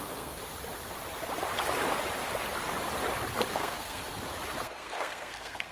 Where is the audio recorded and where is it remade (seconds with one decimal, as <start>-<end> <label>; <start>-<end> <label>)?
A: 0.0-0.4 remade; 0.4-3.5 recorded; 3.5-4.0 remade; 4.0-4.6 recorded; 4.6-5.7 remade